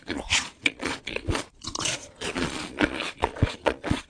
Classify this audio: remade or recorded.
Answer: remade